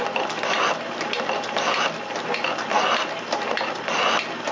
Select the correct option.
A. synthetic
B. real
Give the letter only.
B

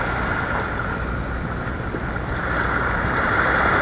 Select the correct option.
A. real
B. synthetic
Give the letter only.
A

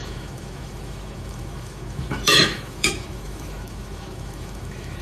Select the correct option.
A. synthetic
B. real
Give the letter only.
A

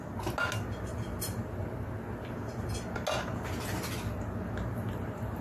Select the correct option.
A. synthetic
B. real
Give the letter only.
B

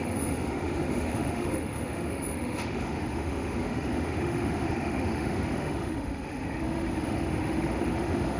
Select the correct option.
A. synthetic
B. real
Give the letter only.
A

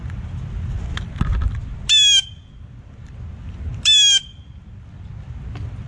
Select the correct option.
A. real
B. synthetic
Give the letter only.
A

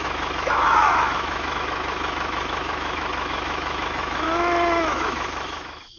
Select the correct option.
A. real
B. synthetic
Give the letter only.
B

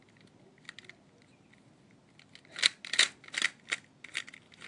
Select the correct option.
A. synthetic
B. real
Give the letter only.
B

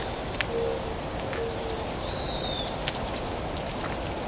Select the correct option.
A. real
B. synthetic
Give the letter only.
A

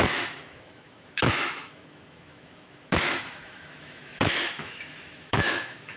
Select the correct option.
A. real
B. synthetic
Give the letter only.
B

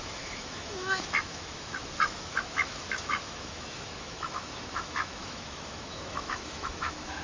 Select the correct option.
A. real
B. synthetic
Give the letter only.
B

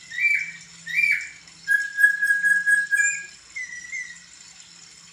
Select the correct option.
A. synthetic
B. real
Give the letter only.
B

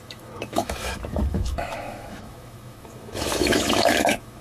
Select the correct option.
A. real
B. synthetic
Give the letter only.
B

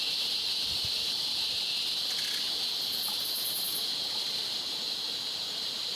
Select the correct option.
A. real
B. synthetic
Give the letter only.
A